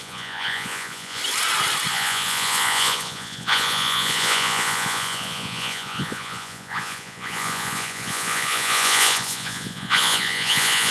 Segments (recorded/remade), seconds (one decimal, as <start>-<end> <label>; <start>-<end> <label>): 0.0-1.2 remade; 1.2-1.9 recorded; 1.9-10.9 remade